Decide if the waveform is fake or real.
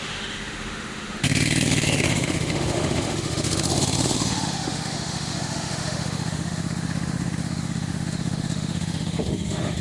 fake